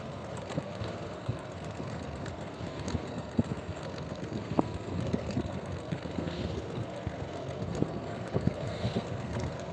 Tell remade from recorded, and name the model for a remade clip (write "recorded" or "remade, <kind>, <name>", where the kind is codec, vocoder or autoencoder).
remade, codec, SNAC